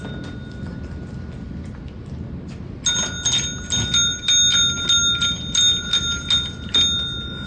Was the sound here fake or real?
real